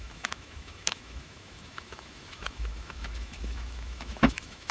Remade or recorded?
remade